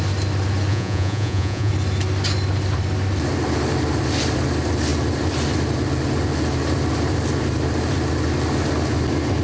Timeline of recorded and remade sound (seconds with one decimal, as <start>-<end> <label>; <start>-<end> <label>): 0.0-0.7 recorded; 0.7-1.7 remade; 1.7-9.4 recorded